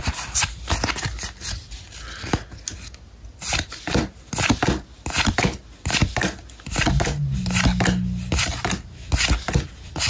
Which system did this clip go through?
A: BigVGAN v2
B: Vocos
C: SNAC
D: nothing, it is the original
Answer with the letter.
D